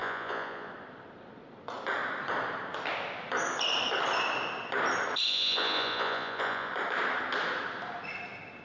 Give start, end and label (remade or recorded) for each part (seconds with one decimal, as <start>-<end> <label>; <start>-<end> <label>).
0.0-0.7 remade; 0.7-5.3 recorded; 5.3-6.7 remade; 6.7-8.6 recorded

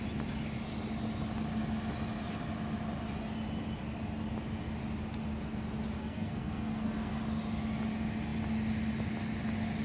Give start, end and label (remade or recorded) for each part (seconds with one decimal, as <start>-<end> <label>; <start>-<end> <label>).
0.0-6.0 recorded; 6.0-7.2 remade; 7.2-9.8 recorded